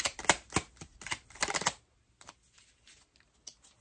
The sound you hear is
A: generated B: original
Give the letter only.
B